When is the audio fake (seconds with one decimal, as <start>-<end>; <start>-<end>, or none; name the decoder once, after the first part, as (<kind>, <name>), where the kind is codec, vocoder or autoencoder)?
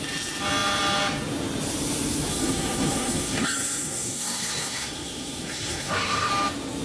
2.3-6.3 (codec, SNAC)